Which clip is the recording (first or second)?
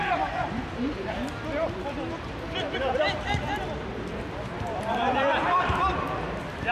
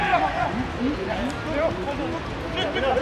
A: second